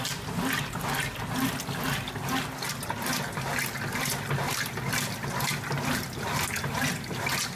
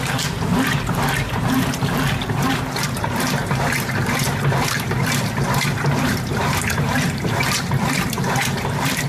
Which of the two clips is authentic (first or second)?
first